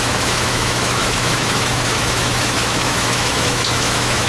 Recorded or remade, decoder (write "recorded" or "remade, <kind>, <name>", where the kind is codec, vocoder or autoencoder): remade, autoencoder, DAC-VAE